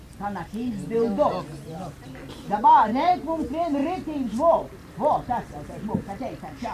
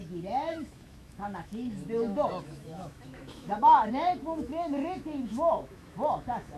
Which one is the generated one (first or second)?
second